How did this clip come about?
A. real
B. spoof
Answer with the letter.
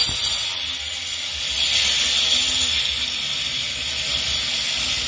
A